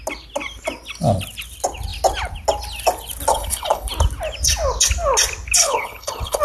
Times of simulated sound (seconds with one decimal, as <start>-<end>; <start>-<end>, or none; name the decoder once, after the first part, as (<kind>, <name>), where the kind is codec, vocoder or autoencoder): 3.3-3.9 (codec, HILCodec); 5.6-6.4